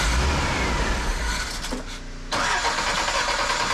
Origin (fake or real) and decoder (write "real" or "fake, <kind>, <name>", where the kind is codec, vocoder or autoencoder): real